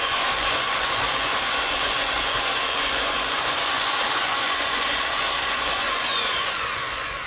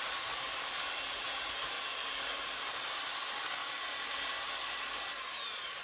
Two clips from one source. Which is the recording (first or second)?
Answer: second